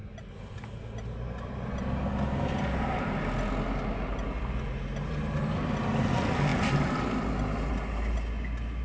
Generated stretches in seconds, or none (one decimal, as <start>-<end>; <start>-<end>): none